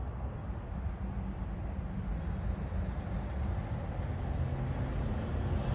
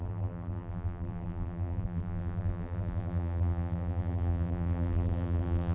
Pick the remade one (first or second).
second